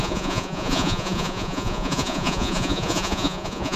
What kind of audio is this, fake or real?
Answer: fake